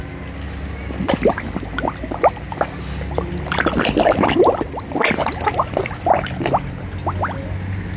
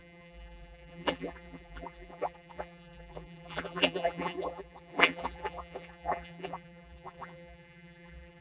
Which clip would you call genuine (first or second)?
first